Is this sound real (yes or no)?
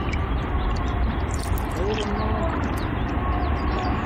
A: yes